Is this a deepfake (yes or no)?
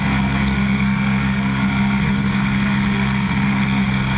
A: yes